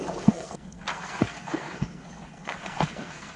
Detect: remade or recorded remade